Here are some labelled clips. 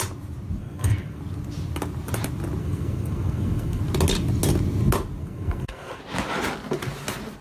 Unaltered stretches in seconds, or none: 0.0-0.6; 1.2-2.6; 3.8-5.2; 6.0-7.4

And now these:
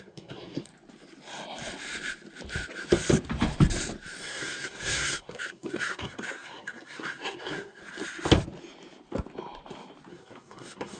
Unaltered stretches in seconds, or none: 0.7-4.2; 7.8-10.1

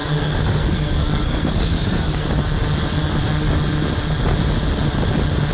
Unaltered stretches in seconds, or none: 2.3-5.5

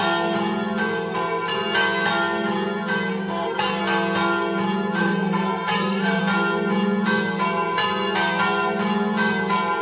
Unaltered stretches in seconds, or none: 0.0-3.1; 3.8-5.0; 6.2-9.8